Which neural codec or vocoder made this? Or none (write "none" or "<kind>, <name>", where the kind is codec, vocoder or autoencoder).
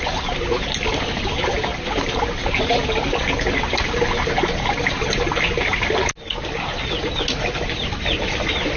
none